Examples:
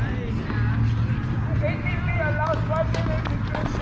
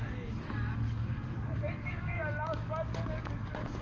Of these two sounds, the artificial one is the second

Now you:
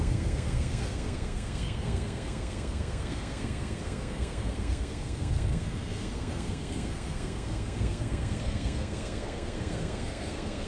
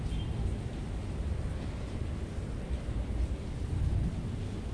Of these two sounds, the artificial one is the first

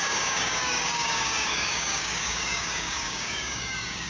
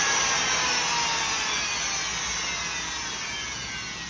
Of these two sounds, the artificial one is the first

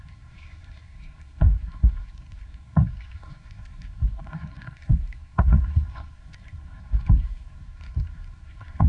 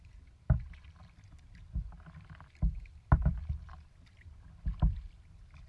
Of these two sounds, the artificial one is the first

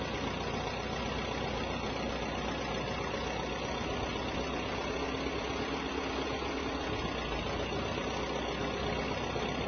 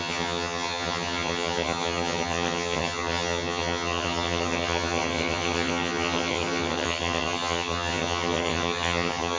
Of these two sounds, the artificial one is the second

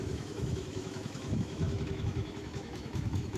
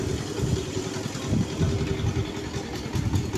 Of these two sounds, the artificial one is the first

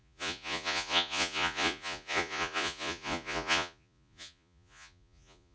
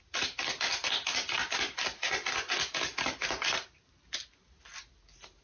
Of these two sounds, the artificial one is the first